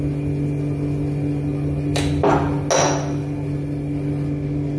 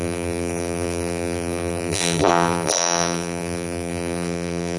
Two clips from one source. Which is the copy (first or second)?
second